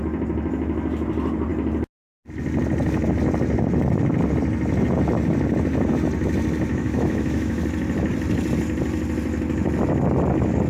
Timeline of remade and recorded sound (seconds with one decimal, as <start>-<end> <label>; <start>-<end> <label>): 0.0-6.7 recorded; 6.7-7.6 remade; 7.6-10.7 recorded